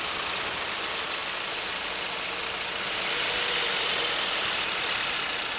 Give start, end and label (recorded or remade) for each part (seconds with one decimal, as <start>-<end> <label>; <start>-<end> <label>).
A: 0.0-5.6 recorded